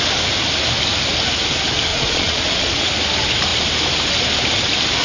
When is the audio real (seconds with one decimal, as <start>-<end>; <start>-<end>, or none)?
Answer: 0.0-1.9; 2.9-5.0